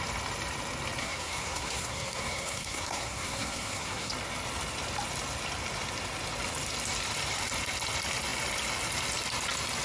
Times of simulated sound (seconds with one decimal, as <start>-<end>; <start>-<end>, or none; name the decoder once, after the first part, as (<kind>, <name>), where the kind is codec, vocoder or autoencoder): 1.0-4.1 (codec, SNAC)